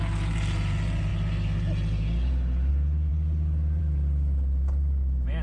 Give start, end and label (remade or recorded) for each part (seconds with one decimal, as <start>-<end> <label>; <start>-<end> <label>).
0.0-5.4 recorded